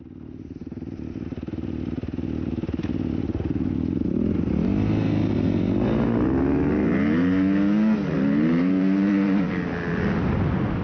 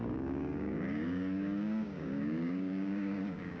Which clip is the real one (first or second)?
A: first